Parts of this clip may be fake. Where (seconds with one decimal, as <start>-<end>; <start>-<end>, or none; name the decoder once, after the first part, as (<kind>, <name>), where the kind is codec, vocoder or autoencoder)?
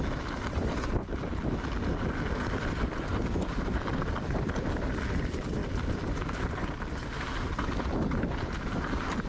none